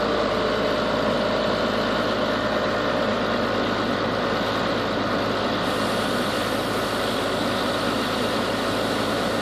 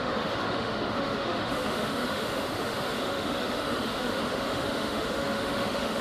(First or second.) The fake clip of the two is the second